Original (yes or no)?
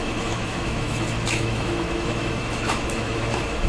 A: no